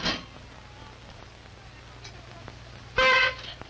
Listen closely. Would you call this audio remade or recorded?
recorded